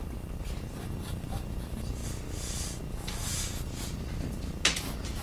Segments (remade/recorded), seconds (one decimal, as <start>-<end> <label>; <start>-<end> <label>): 0.0-2.0 recorded; 2.0-5.2 remade

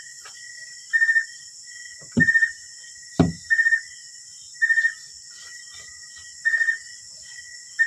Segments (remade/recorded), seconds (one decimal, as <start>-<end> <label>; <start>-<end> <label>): 0.0-7.9 recorded